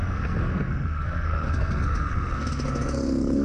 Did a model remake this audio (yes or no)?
yes